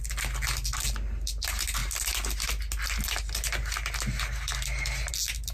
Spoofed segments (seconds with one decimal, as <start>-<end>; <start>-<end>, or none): none